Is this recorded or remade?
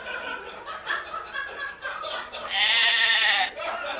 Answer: remade